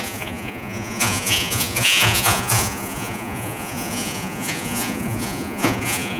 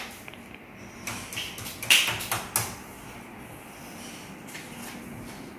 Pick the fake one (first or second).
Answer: first